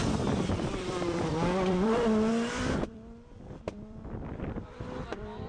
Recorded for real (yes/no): no